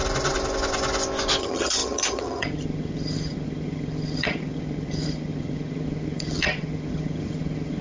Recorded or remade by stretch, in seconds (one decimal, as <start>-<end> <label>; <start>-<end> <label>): 0.0-1.4 recorded; 1.4-7.8 remade